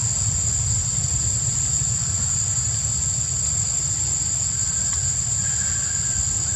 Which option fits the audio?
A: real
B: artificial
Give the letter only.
A